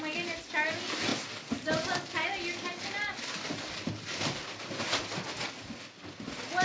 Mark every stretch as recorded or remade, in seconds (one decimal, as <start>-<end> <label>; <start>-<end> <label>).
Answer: 0.0-6.6 recorded